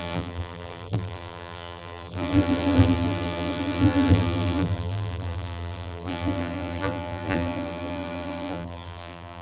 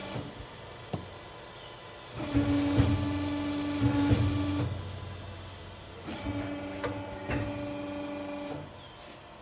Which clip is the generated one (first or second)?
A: first